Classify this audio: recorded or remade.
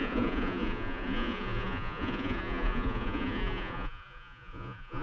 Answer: remade